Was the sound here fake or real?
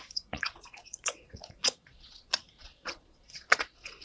fake